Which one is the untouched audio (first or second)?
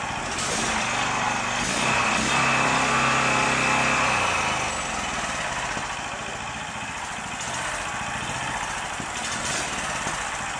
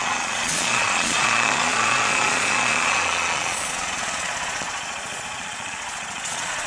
first